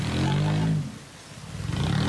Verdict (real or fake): real